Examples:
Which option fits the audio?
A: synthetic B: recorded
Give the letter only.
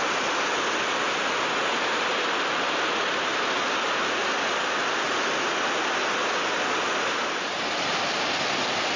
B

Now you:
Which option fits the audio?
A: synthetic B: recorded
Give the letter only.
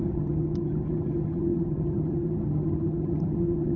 A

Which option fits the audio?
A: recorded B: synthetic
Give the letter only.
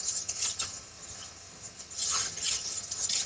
B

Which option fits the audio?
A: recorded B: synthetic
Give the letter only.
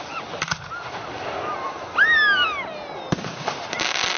A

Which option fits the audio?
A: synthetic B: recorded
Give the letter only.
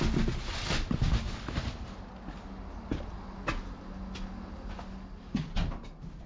B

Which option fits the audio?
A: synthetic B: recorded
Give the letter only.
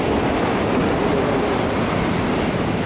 B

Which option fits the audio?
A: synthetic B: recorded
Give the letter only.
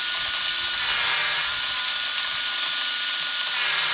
B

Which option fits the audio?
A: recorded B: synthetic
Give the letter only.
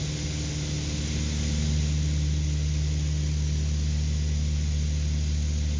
A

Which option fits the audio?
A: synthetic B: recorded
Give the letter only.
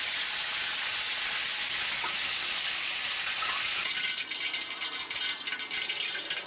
B